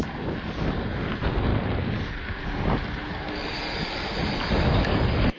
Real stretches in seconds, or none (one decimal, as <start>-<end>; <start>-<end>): 0.0-5.4